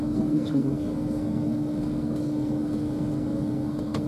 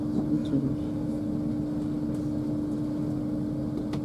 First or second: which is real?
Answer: second